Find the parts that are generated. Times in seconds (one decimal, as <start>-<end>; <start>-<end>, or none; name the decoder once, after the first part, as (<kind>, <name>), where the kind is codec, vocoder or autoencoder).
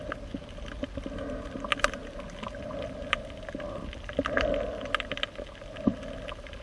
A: none